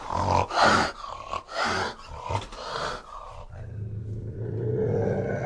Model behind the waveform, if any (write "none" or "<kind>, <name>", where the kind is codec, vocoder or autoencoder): none